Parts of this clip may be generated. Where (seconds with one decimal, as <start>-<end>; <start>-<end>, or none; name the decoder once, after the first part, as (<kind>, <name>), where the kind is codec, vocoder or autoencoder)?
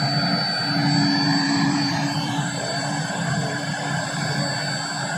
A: 1.3-4.4 (vocoder, BigVGAN v2)